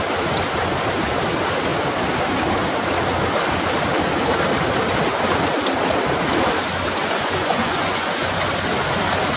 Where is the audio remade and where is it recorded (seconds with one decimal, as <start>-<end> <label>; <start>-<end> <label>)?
0.0-7.0 recorded; 7.0-8.3 remade; 8.3-9.4 recorded